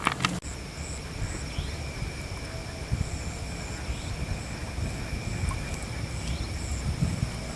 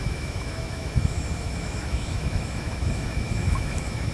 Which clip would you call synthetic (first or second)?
second